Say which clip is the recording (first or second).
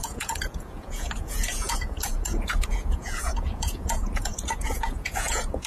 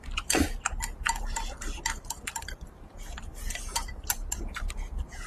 second